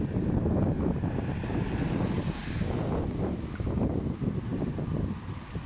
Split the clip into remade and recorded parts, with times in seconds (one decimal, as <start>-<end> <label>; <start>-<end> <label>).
0.0-5.7 recorded

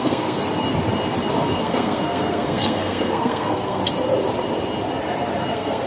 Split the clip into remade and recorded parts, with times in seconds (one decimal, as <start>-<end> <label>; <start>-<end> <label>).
0.0-0.4 remade; 0.4-1.3 recorded; 1.3-3.8 remade; 3.8-5.5 recorded; 5.5-5.9 remade

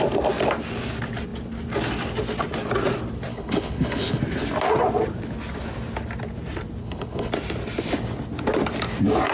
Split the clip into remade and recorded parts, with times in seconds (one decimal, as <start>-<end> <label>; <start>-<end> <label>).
0.0-3.3 recorded; 3.3-4.2 remade; 4.2-6.8 recorded; 6.8-7.3 remade; 7.3-9.3 recorded

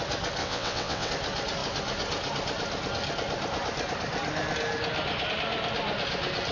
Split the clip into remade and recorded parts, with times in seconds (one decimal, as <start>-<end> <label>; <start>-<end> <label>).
0.0-0.4 recorded; 0.4-1.1 remade; 1.1-6.5 recorded

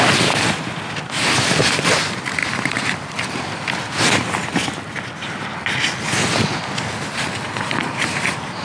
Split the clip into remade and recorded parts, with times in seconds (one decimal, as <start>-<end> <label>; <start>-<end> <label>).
0.0-2.4 recorded; 2.4-3.4 remade; 3.4-8.6 recorded

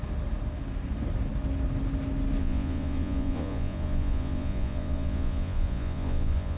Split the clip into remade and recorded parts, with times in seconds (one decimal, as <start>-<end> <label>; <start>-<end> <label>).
0.0-2.4 recorded; 2.4-6.6 remade

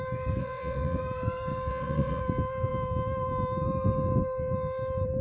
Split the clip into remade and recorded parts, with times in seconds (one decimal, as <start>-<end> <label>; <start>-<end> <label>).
0.0-0.4 recorded; 0.4-1.0 remade; 1.0-1.7 recorded; 1.7-2.2 remade; 2.2-5.2 recorded

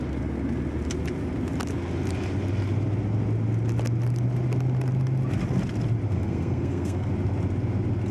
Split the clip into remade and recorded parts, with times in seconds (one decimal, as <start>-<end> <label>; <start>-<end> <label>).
0.0-6.1 recorded; 6.1-7.1 remade; 7.1-8.1 recorded